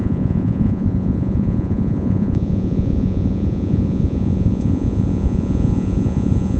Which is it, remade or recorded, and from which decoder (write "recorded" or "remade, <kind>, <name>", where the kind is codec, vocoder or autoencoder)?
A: remade, vocoder, Vocos